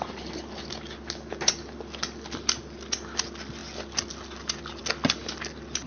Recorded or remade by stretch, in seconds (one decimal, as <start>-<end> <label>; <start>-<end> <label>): 0.0-5.9 recorded